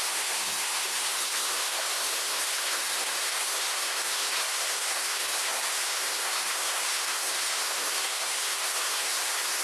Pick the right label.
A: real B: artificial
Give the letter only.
B